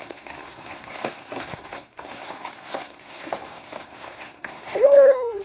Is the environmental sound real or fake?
fake